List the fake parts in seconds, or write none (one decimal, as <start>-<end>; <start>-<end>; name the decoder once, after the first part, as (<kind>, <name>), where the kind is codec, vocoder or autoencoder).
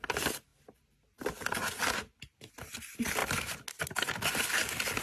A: none